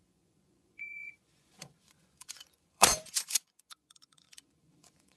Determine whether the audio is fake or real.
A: fake